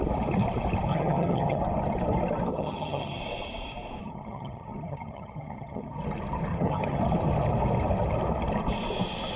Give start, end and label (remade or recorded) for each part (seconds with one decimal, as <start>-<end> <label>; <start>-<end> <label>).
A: 0.0-0.9 recorded; 0.9-1.6 remade; 1.6-2.5 recorded; 2.5-3.2 remade; 3.2-4.0 recorded; 4.0-6.0 remade; 6.0-6.5 recorded; 6.5-7.0 remade; 7.0-9.4 recorded